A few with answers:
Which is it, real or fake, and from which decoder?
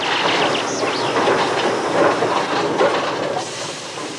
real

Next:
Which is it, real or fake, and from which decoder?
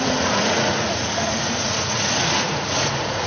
fake, vocoder, Vocos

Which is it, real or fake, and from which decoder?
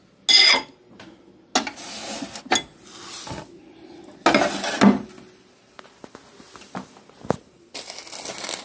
real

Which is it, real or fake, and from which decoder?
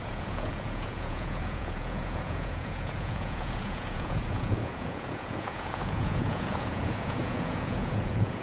fake, vocoder, Vocos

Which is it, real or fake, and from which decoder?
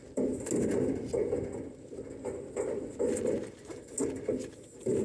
real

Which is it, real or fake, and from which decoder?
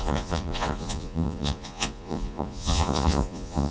fake, vocoder, Vocos